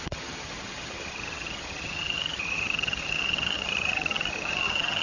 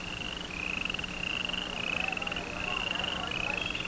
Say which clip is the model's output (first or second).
first